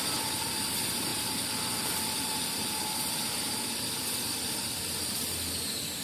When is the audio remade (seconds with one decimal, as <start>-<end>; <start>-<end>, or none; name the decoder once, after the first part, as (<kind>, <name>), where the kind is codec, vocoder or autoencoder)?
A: none